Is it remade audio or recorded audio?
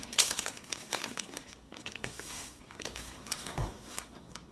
remade